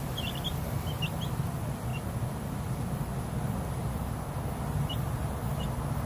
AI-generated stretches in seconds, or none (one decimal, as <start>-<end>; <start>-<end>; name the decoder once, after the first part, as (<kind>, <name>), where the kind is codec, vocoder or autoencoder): none